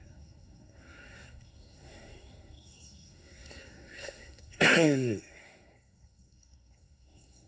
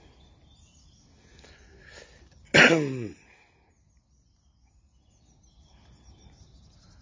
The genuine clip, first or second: second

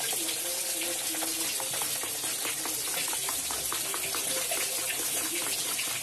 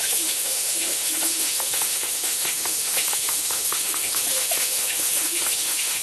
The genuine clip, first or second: first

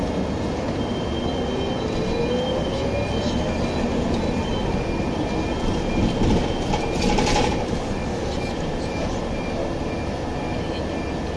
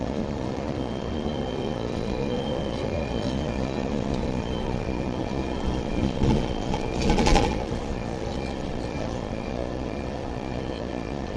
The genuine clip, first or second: first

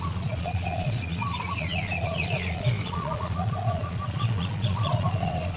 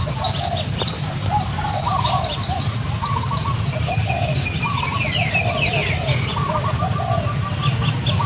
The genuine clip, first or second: second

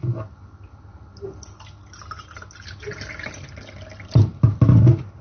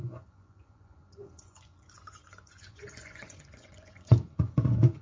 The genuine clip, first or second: first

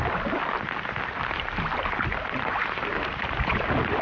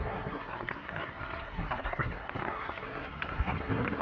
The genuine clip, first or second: first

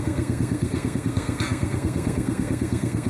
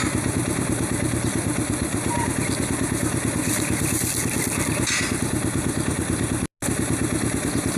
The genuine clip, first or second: second